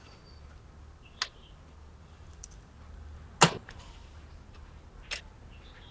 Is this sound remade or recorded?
recorded